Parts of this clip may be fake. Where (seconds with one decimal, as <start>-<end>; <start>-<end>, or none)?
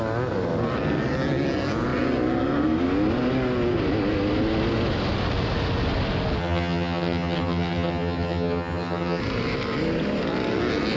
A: 6.4-9.2